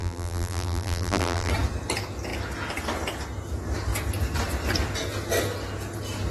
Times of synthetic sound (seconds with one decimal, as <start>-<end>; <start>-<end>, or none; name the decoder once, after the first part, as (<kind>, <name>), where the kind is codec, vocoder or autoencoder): 0.0-1.5 (vocoder, BigVGAN v2)